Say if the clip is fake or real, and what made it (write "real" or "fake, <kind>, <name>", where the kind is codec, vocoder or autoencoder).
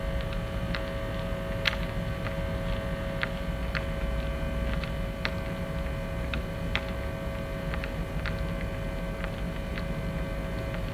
real